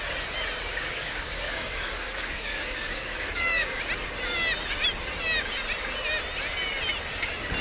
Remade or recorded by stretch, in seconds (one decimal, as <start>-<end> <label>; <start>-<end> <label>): 0.0-0.7 recorded; 0.7-3.8 remade; 3.8-7.6 recorded